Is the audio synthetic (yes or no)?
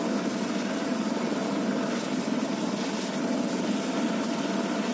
no